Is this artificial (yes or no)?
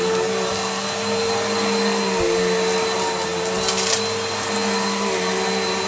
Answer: no